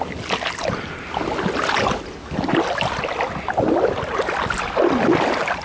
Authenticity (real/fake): real